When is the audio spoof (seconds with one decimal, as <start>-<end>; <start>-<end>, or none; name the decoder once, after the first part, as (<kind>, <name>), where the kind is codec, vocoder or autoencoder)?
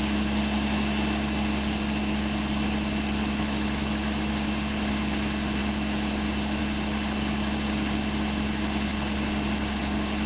3.2-4.3 (autoencoder, DAC-VAE)